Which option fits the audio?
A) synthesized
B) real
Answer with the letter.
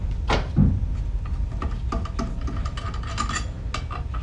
B